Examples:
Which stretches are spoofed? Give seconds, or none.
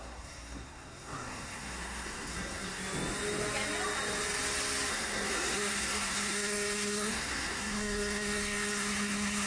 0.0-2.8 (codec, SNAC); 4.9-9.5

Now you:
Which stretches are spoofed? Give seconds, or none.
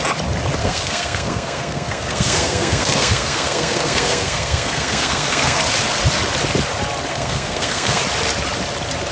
0.6-5.6 (codec, SNAC); 7.1-8.0